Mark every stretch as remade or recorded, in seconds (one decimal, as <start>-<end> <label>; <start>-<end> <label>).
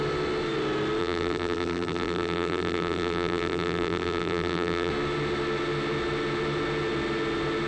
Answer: 0.0-1.0 recorded; 1.0-4.9 remade; 4.9-7.7 recorded